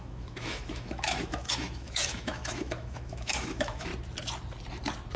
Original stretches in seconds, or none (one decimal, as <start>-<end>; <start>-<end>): 3.9-5.2